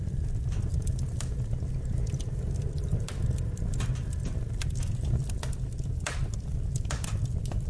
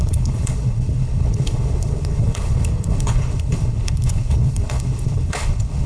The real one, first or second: first